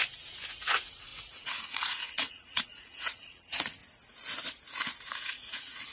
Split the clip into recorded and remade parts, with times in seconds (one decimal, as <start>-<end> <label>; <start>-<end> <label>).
0.0-3.8 remade; 3.8-5.0 recorded; 5.0-5.9 remade